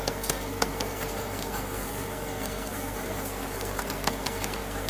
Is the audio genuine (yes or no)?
no